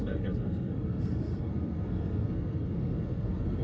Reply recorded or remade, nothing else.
remade